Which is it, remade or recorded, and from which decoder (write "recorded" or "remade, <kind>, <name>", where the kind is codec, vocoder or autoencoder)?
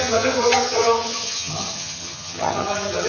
remade, vocoder, HiFi-GAN